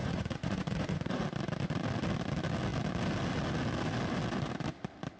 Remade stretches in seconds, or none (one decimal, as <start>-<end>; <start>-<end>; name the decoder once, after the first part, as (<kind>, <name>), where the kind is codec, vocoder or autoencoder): 0.0-1.2 (vocoder, Vocos)